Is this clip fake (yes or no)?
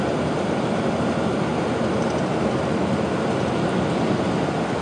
no